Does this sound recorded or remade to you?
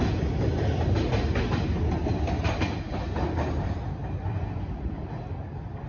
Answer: recorded